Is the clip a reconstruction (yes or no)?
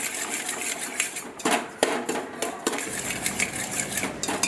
no